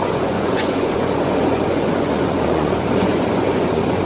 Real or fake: fake